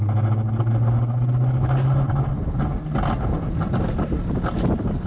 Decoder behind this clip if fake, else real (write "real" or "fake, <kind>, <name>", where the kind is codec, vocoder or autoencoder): real